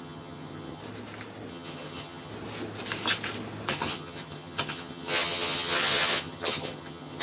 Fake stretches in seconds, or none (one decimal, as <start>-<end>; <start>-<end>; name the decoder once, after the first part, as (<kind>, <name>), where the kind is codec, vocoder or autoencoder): 0.0-0.8 (vocoder, HiFi-GAN); 1.5-2.3; 3.7-7.2